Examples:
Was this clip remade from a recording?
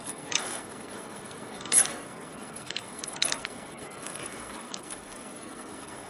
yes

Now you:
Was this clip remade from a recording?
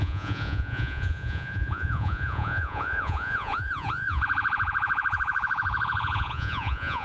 yes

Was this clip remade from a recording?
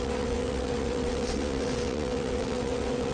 yes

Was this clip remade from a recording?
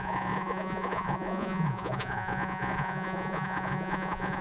yes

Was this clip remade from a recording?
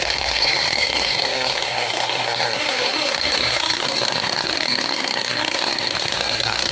yes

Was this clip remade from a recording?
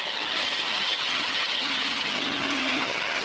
yes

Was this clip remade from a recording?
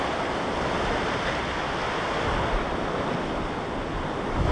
no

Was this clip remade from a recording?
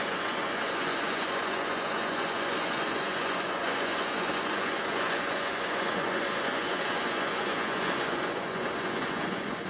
yes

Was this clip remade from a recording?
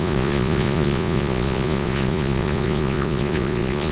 yes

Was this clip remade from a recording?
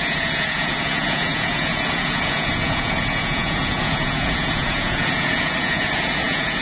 yes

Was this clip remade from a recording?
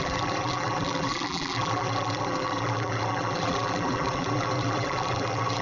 yes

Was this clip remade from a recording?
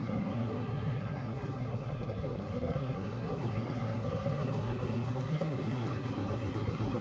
yes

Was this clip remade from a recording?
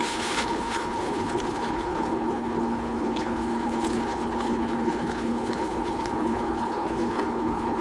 yes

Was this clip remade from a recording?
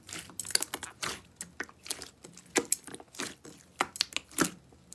no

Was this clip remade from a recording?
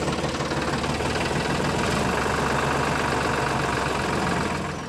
no